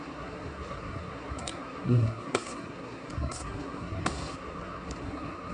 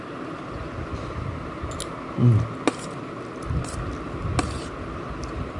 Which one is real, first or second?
second